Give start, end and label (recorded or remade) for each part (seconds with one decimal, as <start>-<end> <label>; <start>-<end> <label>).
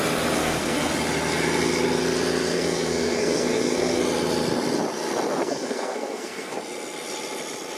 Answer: 0.0-0.4 recorded; 0.4-0.9 remade; 0.9-2.5 recorded; 2.5-4.0 remade; 4.0-5.4 recorded; 5.4-6.6 remade; 6.6-7.8 recorded